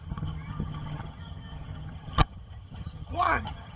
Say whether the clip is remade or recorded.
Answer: remade